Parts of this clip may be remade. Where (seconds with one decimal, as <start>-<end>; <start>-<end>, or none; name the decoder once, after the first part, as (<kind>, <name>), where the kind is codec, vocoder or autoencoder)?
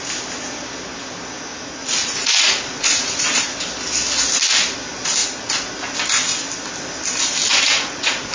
1.8-3.4 (vocoder, Vocos); 7.5-8.3